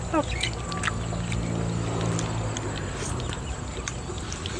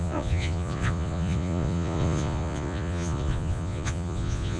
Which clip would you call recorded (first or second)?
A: first